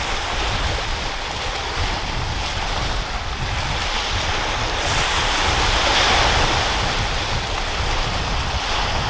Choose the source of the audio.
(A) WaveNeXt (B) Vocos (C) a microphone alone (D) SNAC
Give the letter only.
C